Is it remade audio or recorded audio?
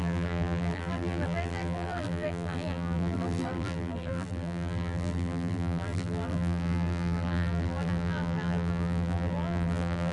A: remade